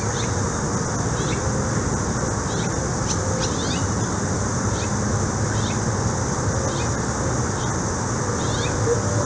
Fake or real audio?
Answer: real